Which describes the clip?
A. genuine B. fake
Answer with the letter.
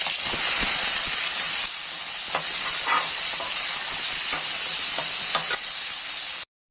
A